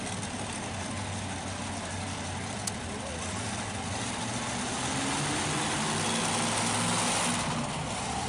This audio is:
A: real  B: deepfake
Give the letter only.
A